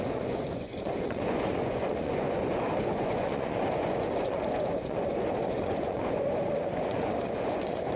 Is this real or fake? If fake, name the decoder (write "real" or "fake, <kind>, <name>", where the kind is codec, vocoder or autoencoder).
fake, vocoder, Vocos